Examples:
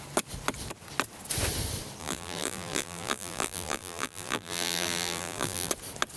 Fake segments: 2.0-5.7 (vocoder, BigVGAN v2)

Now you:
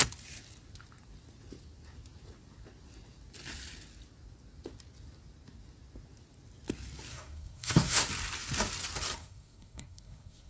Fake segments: 7.1-8.1 (codec, SNAC); 9.2-10.5

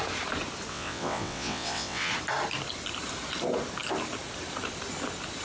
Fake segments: 0.7-2.1 (vocoder, WaveNeXt)

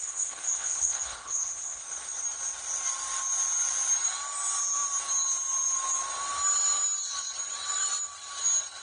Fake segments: 0.0-1.8 (codec, HILCodec)

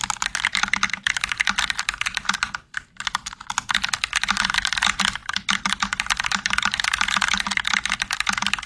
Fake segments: none

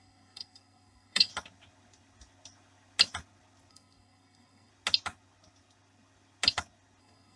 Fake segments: 0.0-1.3 (codec, SNAC); 3.7-4.7; 7.0-7.4

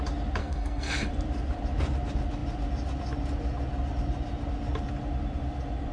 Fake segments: 0.4-1.1 (codec, SNAC)

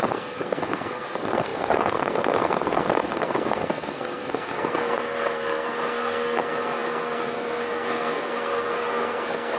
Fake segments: 0.0-9.6 (codec, SNAC)